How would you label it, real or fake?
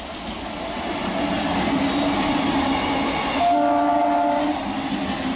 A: real